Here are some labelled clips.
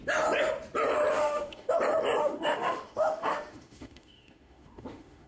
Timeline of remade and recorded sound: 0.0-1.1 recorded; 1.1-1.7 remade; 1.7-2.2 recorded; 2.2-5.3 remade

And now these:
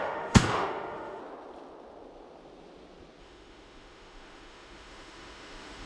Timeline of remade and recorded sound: 0.0-1.2 remade; 1.2-3.2 recorded; 3.2-5.9 remade